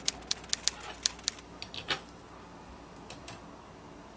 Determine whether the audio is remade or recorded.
recorded